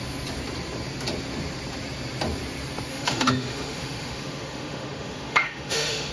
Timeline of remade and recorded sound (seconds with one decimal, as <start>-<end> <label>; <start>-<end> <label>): 0.0-2.9 recorded; 2.9-6.1 remade